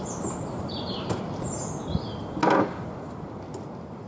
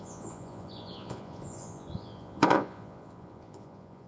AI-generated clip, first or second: second